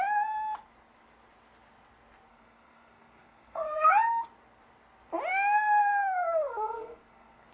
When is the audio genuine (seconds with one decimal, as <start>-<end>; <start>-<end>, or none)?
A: 0.0-2.3; 3.9-5.3